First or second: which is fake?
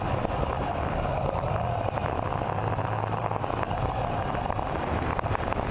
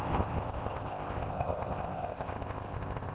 second